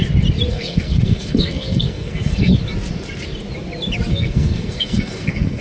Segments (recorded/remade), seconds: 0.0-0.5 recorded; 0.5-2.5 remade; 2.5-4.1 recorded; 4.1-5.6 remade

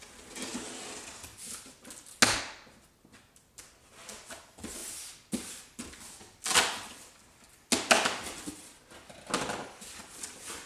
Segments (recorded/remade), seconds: 0.0-10.7 recorded

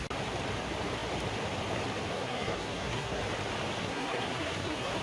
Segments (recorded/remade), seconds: 0.0-2.1 recorded; 2.1-3.2 remade; 3.2-3.8 recorded; 3.8-5.0 remade

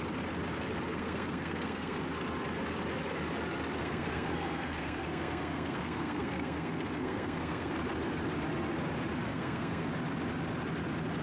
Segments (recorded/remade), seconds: 0.0-0.9 recorded; 0.9-2.0 remade; 2.0-3.8 recorded; 3.8-7.7 remade; 7.7-9.3 recorded; 9.3-9.9 remade; 9.9-11.2 recorded

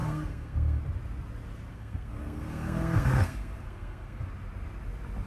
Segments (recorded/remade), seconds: 0.0-0.8 remade; 0.8-1.7 recorded; 1.7-4.2 remade; 4.2-5.3 recorded

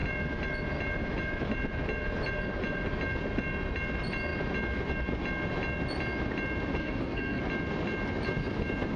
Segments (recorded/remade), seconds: 0.0-6.8 recorded; 6.8-7.4 remade; 7.4-9.0 recorded